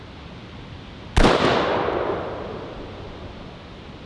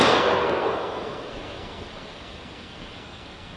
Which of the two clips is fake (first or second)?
second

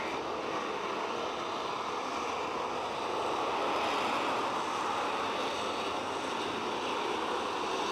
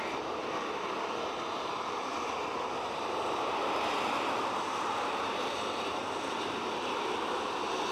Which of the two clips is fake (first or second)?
second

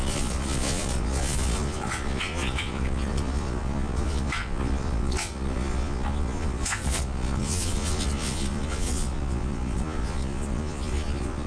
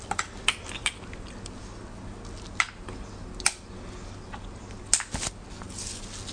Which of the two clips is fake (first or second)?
first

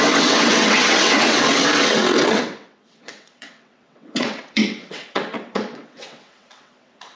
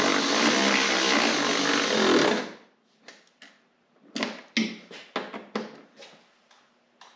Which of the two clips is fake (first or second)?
first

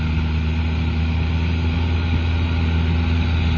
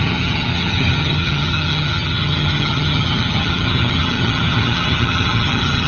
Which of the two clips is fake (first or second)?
second